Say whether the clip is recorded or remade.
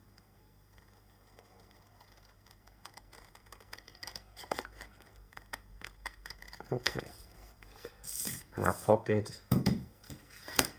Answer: remade